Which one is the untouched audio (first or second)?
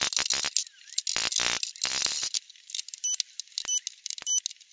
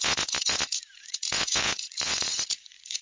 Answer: first